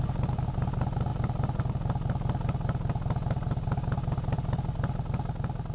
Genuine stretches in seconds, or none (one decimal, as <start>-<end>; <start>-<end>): 0.0-1.1; 1.6-5.7